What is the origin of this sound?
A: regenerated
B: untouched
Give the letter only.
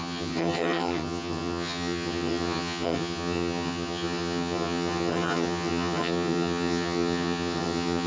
A